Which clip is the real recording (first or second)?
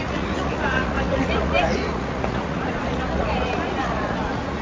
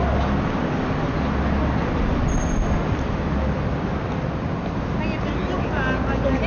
second